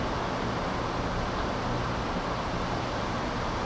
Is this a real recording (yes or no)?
yes